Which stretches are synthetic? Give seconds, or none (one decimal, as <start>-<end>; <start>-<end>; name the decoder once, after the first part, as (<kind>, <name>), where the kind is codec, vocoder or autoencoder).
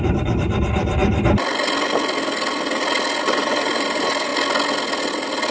0.0-1.0 (vocoder, BigVGAN v2); 3.2-4.3